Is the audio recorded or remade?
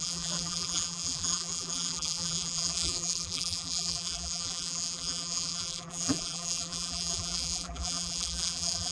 remade